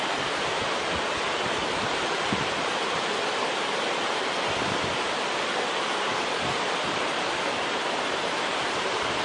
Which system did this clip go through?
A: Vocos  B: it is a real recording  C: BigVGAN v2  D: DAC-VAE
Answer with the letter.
C